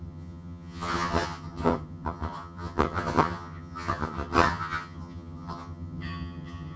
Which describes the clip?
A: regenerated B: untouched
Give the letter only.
A